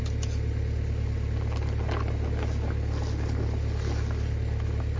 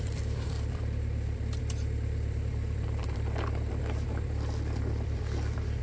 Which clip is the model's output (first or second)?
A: second